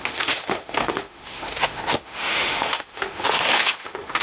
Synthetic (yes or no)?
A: yes